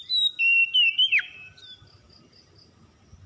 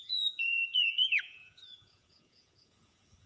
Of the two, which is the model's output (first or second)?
second